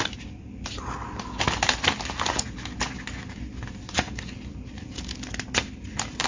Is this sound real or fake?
real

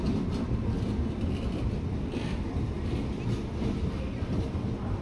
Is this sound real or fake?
real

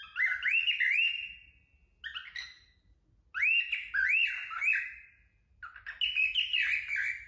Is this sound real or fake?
real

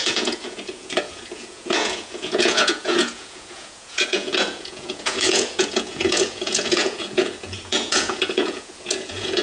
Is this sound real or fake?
fake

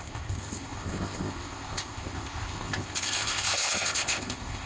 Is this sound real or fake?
fake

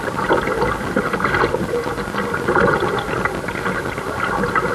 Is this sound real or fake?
real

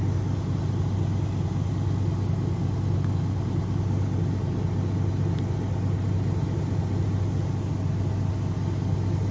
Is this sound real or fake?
real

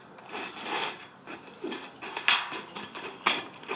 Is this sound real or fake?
real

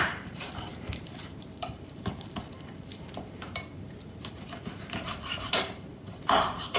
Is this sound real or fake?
fake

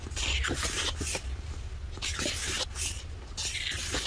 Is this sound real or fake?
real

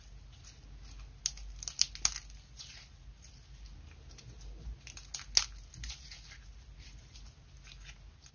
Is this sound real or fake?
real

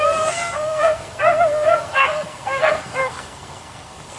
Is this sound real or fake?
fake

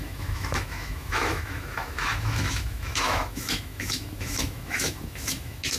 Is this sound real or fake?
fake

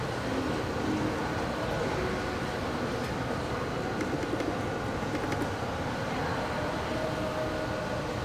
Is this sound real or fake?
real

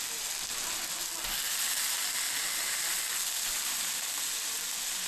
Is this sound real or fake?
real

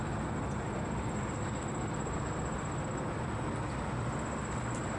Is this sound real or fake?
real